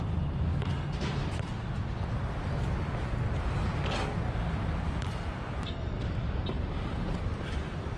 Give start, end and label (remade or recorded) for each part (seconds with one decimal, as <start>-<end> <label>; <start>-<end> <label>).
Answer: 0.0-1.2 remade; 1.2-4.5 recorded; 4.5-8.0 remade